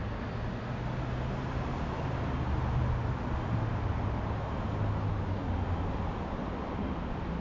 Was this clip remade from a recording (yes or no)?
no